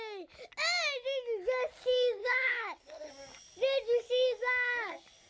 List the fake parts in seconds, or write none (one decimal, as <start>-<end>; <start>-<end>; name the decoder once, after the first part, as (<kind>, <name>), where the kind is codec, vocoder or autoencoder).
2.2-3.1 (codec, HILCodec)